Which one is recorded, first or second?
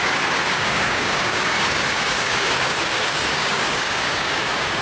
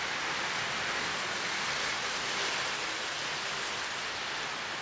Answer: second